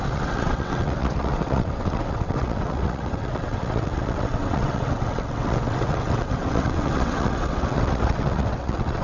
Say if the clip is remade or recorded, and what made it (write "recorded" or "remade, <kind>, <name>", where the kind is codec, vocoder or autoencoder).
remade, vocoder, WaveNeXt